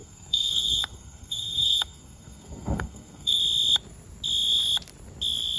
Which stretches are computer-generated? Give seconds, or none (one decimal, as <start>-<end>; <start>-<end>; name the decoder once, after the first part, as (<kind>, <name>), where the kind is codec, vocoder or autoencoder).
0.0-3.4 (codec, SNAC)